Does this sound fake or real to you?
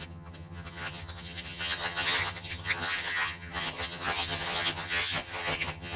fake